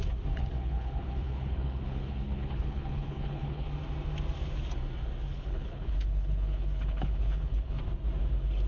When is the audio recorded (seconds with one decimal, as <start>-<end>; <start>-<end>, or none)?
0.0-0.4; 3.7-5.3; 7.8-8.7